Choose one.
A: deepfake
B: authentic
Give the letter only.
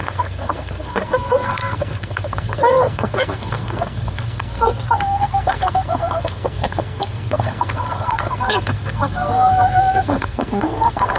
A